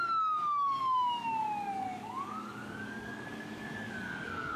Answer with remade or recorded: remade